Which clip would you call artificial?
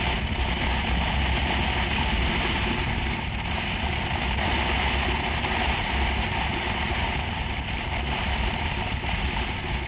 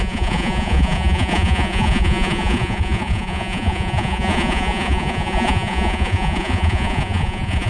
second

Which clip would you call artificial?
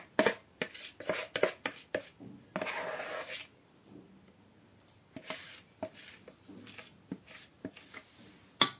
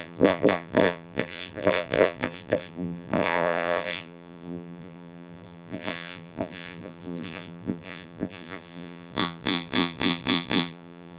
second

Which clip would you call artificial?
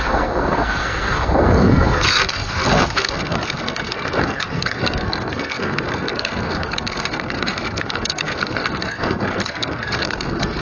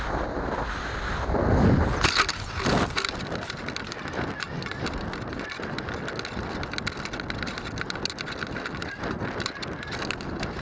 first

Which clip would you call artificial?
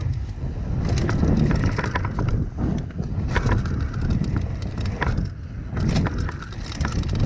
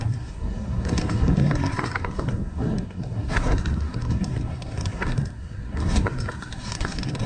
second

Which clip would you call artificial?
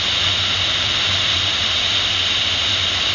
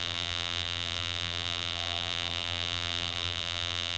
second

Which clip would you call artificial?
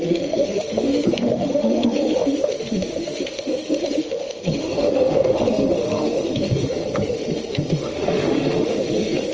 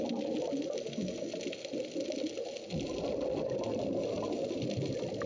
first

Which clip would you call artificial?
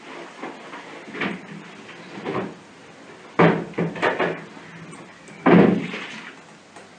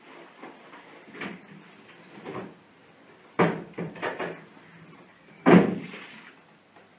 second